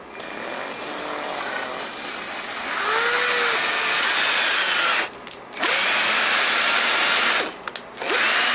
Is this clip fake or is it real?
real